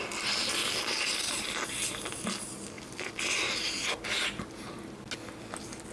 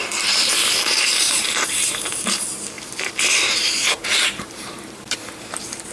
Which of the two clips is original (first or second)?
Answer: first